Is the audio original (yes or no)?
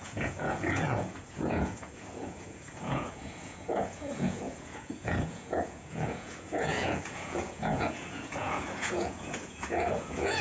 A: no